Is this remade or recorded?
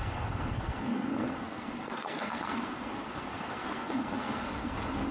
remade